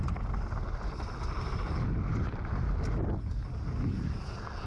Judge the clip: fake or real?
real